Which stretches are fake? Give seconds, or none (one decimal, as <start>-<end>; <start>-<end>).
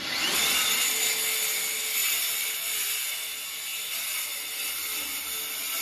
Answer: none